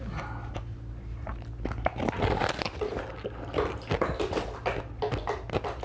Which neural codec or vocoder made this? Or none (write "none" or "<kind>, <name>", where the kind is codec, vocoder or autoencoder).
none